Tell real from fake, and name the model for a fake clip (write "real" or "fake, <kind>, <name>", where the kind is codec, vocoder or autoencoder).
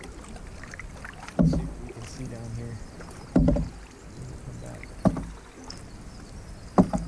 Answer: real